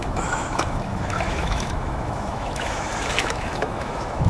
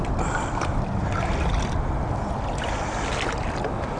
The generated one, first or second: first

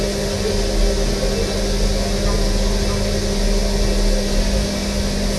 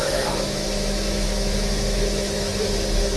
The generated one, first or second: second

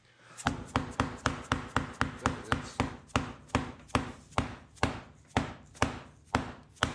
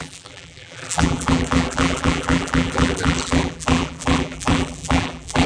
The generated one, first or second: second